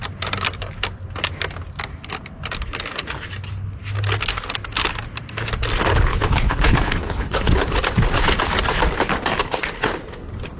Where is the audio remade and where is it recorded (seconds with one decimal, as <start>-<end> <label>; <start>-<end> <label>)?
0.0-6.1 recorded; 6.1-7.8 remade; 7.8-10.6 recorded